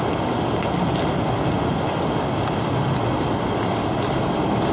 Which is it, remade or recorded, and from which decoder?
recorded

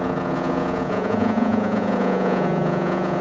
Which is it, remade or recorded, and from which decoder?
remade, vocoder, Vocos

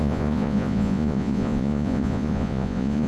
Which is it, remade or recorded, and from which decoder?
remade, vocoder, Vocos